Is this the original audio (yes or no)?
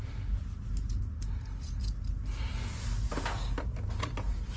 yes